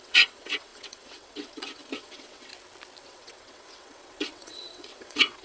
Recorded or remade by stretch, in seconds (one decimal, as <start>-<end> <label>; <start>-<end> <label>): 0.0-2.5 remade; 2.5-3.0 recorded; 3.0-5.4 remade